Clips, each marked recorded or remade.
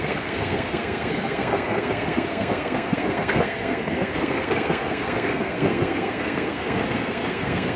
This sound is remade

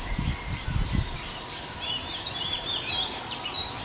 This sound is remade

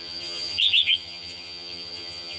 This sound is remade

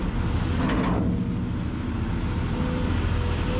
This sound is recorded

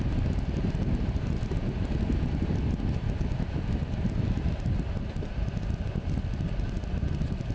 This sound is recorded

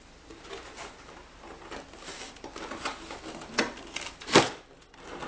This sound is remade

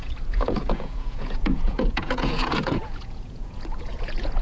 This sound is remade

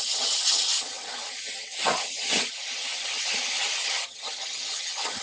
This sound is remade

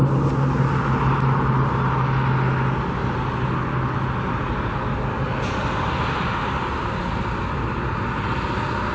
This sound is recorded